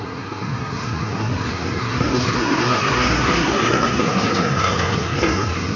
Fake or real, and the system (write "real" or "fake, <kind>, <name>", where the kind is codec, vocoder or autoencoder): fake, codec, SNAC